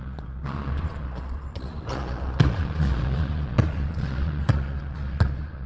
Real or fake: fake